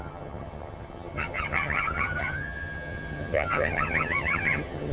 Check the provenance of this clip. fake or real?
fake